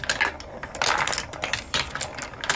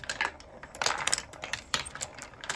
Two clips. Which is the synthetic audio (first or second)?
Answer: second